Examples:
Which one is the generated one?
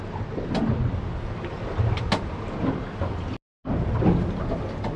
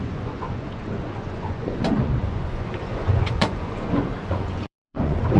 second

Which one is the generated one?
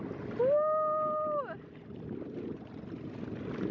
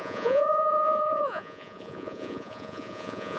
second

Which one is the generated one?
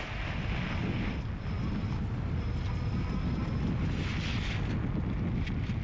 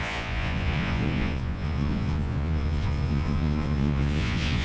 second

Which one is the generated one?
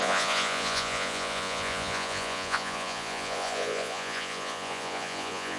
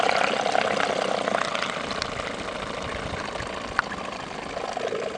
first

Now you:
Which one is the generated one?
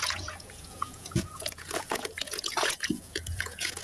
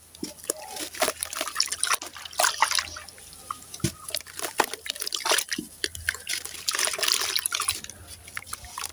first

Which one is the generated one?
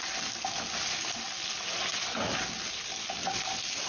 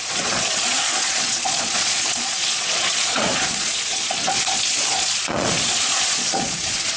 second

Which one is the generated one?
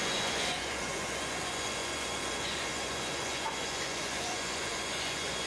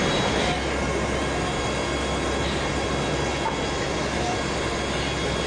first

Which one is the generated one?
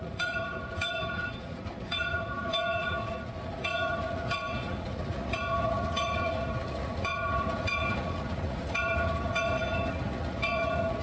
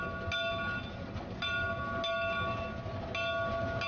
first